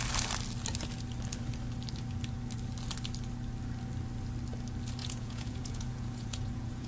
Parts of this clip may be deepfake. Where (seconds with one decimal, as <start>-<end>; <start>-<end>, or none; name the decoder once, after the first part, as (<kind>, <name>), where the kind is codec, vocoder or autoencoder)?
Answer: 5.0-6.9 (vocoder, Vocos)